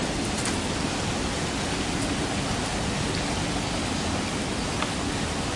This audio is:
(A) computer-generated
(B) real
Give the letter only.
B